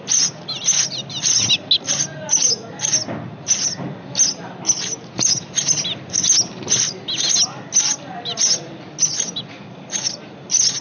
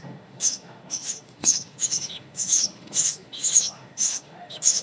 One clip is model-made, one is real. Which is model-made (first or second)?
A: second